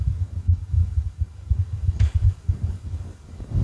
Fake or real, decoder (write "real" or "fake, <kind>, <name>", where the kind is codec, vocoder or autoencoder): fake, codec, DAC